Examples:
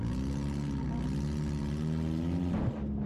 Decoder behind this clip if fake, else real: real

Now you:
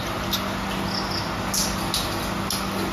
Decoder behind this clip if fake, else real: real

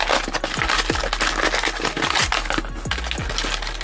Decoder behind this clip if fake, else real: real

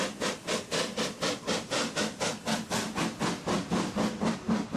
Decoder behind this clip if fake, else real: real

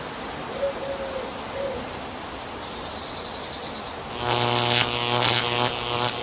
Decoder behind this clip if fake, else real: real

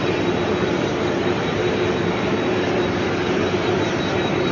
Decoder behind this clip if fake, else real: fake, vocoder, BigVGAN v2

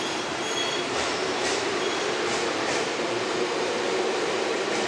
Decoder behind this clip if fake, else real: fake, vocoder, BigVGAN v2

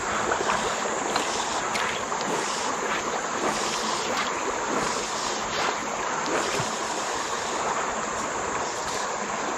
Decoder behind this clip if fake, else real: real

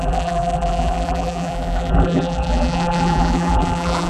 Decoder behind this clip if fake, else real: fake, vocoder, BigVGAN v2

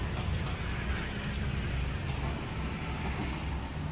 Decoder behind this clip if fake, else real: real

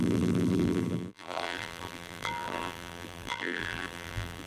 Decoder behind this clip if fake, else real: fake, vocoder, BigVGAN v2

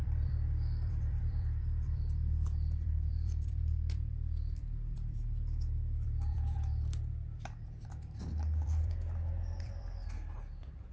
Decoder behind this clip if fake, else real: fake, vocoder, BigVGAN v2